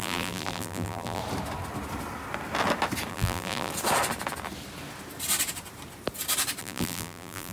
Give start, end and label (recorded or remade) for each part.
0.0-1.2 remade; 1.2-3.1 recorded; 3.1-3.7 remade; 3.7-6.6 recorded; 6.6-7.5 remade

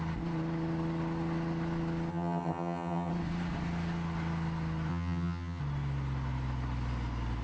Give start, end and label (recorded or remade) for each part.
0.0-2.1 recorded; 2.1-3.1 remade; 3.1-4.9 recorded; 4.9-5.6 remade; 5.6-7.4 recorded